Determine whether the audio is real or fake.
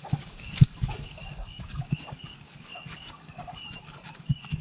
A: fake